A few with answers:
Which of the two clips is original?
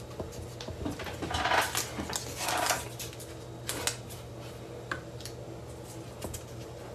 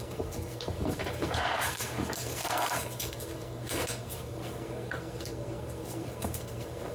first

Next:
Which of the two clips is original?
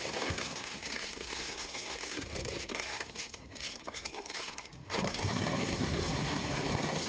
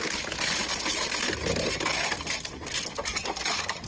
second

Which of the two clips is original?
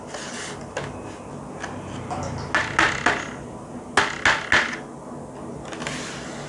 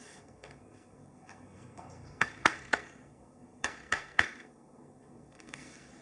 first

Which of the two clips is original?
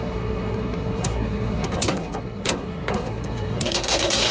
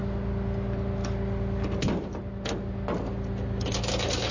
second